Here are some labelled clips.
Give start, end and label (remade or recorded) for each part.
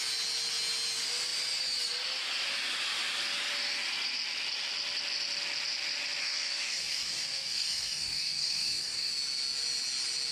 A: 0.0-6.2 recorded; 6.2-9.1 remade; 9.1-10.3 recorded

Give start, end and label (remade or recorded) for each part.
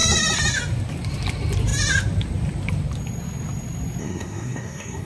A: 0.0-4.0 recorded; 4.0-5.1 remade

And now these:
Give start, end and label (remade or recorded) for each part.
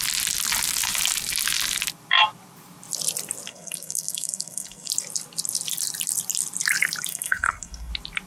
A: 0.0-3.5 recorded; 3.5-4.9 remade; 4.9-7.1 recorded; 7.1-7.9 remade; 7.9-8.3 recorded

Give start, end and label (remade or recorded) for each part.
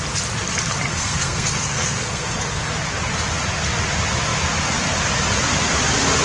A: 0.0-0.9 recorded; 0.9-2.7 remade; 2.7-6.2 recorded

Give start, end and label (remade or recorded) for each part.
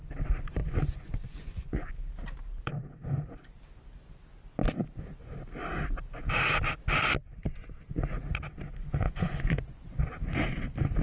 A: 0.0-0.6 recorded; 0.6-1.9 remade; 1.9-8.8 recorded; 8.8-10.0 remade; 10.0-11.0 recorded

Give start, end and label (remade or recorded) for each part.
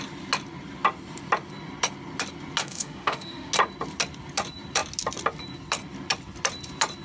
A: 0.0-2.6 recorded; 2.6-3.5 remade; 3.5-7.0 recorded